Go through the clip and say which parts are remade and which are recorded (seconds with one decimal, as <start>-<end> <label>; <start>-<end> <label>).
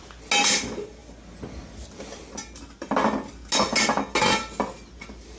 0.0-5.4 recorded